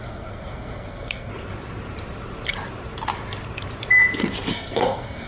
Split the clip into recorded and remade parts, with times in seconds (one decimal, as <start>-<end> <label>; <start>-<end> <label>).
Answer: 0.0-1.3 remade; 1.3-4.5 recorded; 4.5-5.3 remade